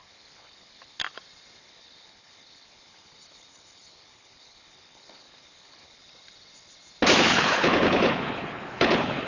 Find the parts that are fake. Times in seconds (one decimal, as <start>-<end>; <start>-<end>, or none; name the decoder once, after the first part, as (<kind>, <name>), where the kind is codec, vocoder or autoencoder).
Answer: 0.0-1.0 (codec, HILCodec); 1.6-6.0; 7.2-9.3

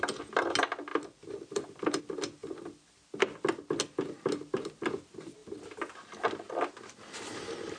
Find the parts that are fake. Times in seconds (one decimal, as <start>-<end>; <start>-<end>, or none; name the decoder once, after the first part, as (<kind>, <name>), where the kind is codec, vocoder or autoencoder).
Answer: 0.9-2.0 (vocoder, BigVGAN v2); 2.4-3.0

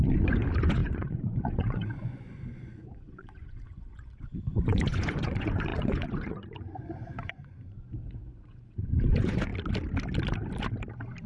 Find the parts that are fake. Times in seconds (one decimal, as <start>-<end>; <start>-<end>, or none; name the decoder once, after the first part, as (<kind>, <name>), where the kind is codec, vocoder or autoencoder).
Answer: 0.0-9.5 (vocoder, Vocos)